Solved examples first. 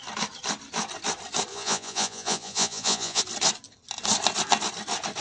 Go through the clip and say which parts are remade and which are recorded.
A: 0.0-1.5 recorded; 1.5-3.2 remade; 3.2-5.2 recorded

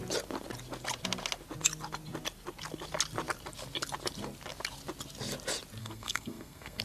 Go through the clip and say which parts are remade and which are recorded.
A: 0.0-5.8 recorded; 5.8-6.8 remade

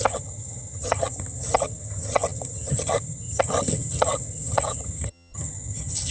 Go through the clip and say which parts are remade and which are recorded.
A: 0.0-6.1 remade

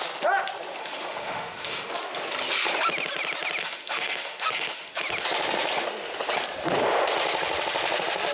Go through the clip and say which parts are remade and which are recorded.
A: 0.0-0.8 recorded; 0.8-1.9 remade; 1.9-3.6 recorded; 3.6-5.0 remade; 5.0-8.3 recorded

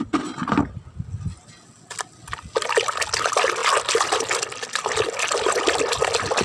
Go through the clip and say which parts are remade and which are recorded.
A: 0.0-6.4 recorded

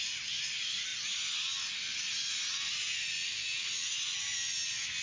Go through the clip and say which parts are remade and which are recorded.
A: 0.0-5.0 recorded

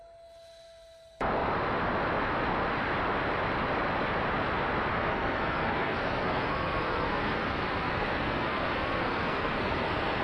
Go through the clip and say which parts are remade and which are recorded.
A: 0.0-4.9 recorded; 4.9-10.2 remade